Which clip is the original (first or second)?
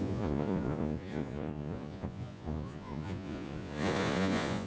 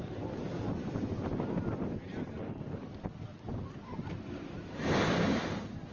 second